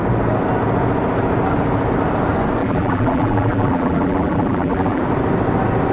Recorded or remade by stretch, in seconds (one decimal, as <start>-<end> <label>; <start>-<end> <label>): 0.0-2.6 recorded; 2.6-5.0 remade; 5.0-5.9 recorded

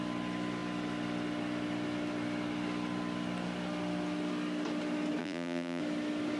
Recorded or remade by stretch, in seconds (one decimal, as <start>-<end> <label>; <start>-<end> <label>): 0.0-5.2 recorded; 5.2-5.8 remade; 5.8-6.4 recorded

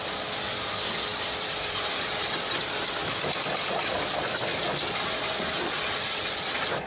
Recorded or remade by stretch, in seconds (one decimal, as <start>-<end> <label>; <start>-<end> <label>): 0.0-1.1 recorded; 1.1-2.3 remade; 2.3-3.0 recorded; 3.0-3.7 remade; 3.7-6.9 recorded